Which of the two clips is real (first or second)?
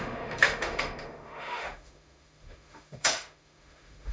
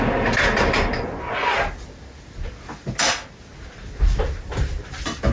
second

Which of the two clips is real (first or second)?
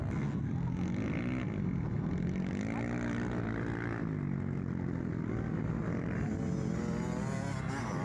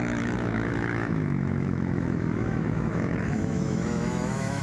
first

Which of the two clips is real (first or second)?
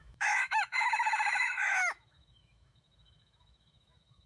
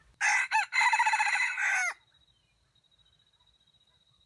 second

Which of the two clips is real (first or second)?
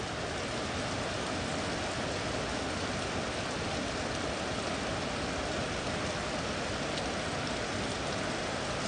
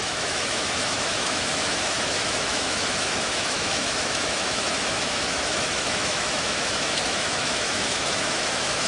first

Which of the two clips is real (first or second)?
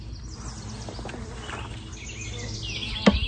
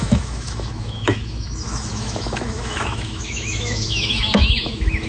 first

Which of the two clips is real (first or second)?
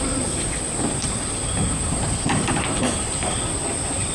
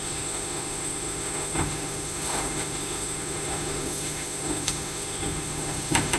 first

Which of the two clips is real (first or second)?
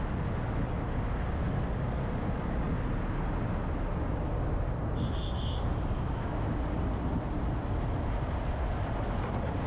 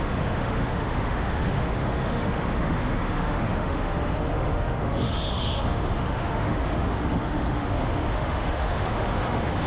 first